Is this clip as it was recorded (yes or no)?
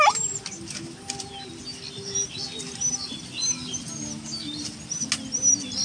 yes